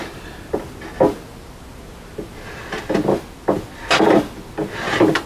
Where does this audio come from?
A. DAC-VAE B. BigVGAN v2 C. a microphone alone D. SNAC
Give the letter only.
C